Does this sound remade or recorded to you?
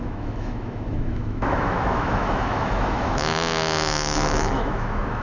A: remade